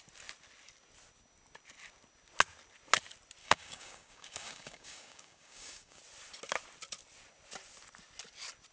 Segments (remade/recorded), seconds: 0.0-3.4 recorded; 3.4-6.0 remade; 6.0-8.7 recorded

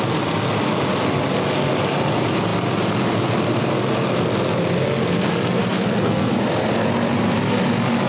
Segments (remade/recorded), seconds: 0.0-5.6 recorded; 5.6-6.3 remade; 6.3-8.1 recorded

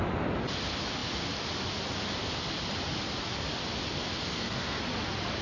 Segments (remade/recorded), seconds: 0.0-4.3 recorded; 4.3-4.8 remade; 4.8-5.4 recorded

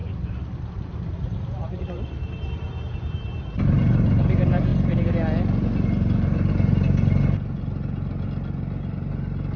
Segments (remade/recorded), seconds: 0.0-4.7 remade; 4.7-6.5 recorded; 6.5-8.1 remade; 8.1-9.1 recorded; 9.1-9.6 remade

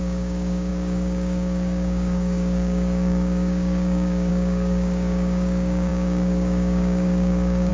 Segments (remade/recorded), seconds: 0.0-7.7 remade